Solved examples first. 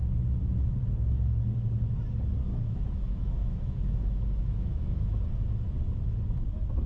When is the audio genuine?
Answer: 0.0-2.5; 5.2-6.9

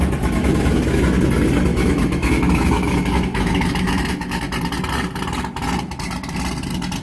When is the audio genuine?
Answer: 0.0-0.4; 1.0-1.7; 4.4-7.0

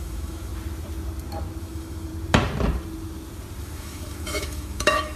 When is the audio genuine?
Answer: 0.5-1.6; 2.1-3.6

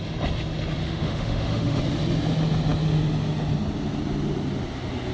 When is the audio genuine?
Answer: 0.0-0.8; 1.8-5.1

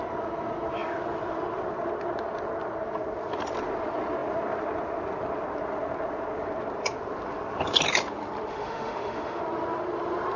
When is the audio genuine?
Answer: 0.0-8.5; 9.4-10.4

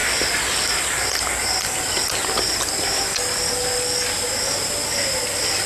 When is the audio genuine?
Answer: 0.0-5.7

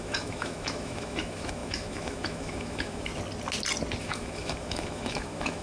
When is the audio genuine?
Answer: 3.1-4.0